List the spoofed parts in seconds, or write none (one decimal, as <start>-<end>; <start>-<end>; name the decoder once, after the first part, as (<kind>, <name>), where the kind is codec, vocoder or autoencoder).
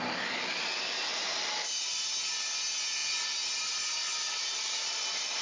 none